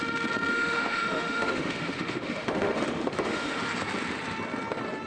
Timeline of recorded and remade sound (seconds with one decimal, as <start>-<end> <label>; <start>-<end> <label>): 0.0-0.5 recorded; 0.5-3.6 remade; 3.6-5.1 recorded